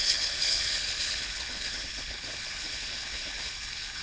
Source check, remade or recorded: remade